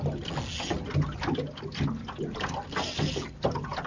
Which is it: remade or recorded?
recorded